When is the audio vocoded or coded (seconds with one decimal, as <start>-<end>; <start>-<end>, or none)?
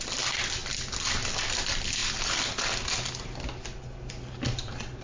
none